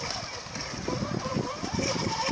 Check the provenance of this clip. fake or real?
real